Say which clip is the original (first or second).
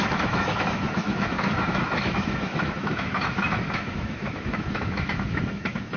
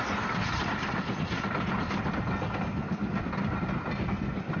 second